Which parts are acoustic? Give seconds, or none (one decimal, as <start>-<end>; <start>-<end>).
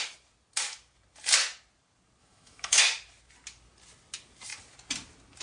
0.0-2.2; 2.8-5.4